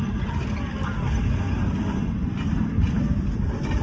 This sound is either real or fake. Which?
real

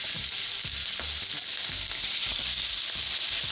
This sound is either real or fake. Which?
real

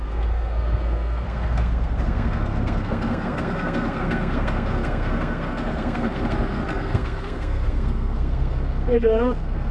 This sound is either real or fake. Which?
fake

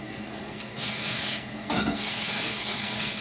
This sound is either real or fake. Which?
fake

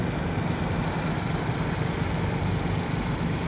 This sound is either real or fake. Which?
real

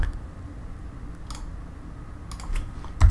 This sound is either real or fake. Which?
real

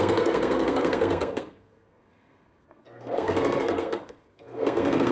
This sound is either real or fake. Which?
fake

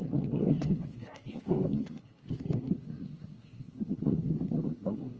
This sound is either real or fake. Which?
fake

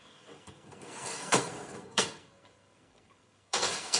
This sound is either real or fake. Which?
fake